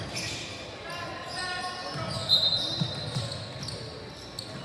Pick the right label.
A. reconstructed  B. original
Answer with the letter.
B